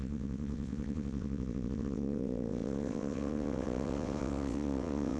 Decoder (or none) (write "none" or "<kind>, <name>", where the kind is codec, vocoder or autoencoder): vocoder, WaveNeXt